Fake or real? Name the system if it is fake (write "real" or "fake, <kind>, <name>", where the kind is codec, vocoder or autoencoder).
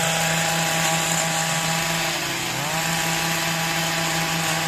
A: real